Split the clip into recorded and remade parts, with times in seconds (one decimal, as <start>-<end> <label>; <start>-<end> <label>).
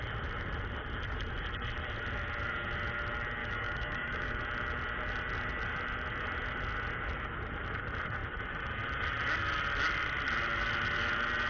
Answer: 0.0-3.4 recorded; 3.4-4.4 remade; 4.4-11.5 recorded